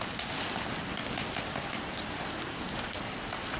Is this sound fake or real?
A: real